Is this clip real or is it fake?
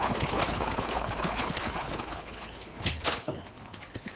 fake